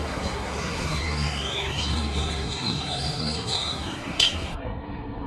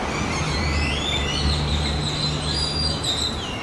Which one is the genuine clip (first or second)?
second